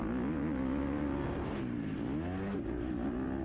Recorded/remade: recorded